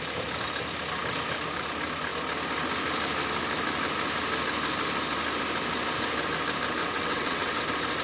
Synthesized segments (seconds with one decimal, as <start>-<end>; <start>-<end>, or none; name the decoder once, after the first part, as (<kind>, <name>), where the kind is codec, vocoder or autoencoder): 6.8-7.6 (vocoder, WaveNeXt)